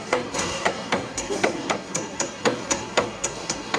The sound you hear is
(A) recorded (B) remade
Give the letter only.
B